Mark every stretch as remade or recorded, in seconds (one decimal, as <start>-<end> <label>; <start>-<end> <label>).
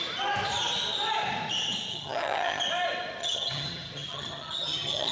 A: 0.0-1.9 recorded; 1.9-2.6 remade; 2.6-3.2 recorded; 3.2-5.1 remade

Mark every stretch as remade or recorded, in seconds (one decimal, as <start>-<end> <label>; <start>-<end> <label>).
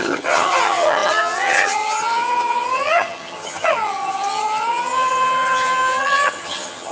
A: 0.0-6.9 remade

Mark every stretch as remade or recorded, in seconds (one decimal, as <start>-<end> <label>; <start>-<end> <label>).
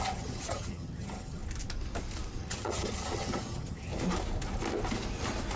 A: 0.0-1.4 remade; 1.4-2.4 recorded; 2.4-3.9 remade; 3.9-5.6 recorded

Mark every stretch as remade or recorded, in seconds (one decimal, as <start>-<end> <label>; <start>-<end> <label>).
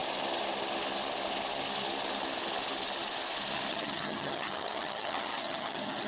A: 0.0-3.7 recorded; 3.7-6.1 remade